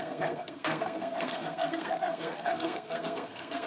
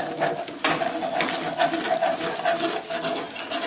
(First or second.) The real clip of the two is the second